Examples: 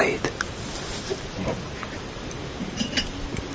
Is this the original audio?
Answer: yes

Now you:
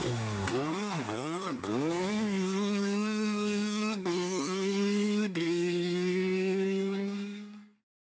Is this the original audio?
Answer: no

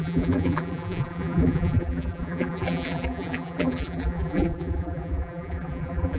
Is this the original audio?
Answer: no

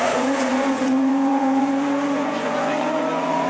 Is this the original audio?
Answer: no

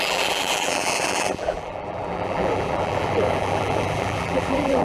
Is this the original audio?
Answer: no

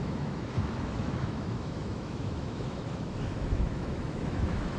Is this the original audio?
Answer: no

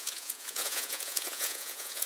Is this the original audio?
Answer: no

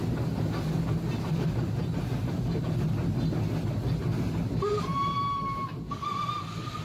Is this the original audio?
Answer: yes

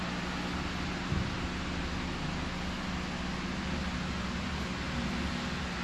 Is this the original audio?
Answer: yes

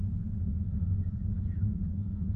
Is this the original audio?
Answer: no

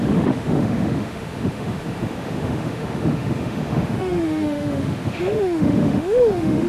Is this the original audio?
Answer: no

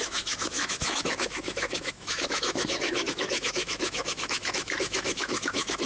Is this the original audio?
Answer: no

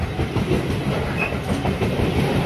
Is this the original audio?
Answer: yes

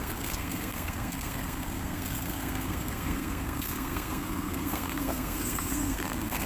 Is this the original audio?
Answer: no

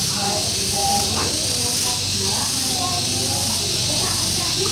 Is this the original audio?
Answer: yes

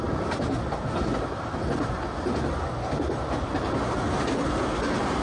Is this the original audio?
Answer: yes